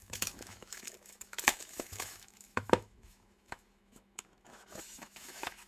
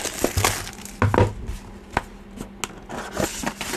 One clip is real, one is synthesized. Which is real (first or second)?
second